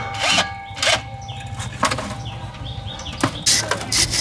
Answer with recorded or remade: recorded